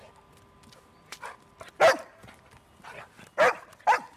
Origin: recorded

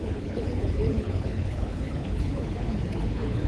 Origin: remade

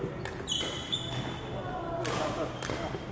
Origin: recorded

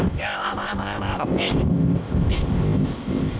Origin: remade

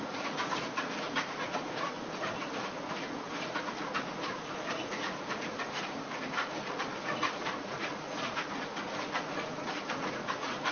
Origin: remade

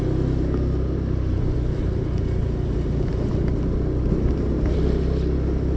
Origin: recorded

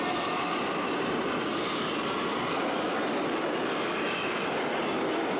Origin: recorded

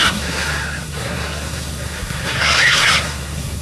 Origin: remade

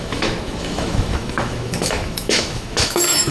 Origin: remade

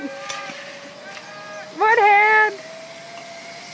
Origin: recorded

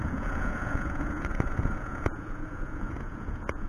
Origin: remade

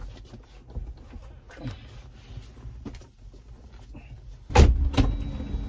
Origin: recorded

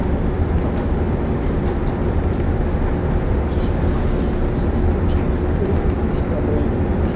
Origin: remade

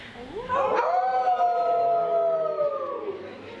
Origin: recorded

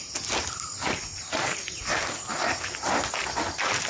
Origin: recorded